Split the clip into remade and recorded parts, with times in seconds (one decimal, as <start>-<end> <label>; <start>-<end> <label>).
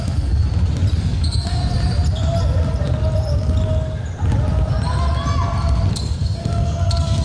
0.0-0.4 remade; 0.4-1.0 recorded; 1.0-1.6 remade; 1.6-5.9 recorded; 5.9-7.2 remade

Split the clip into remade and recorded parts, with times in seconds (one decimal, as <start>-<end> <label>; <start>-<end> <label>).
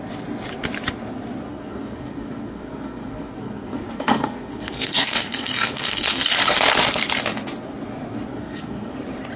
0.0-1.5 recorded; 1.5-6.3 remade; 6.3-8.3 recorded; 8.3-8.9 remade; 8.9-9.4 recorded